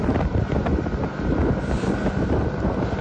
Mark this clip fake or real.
real